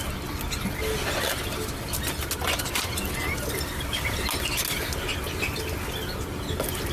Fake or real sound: real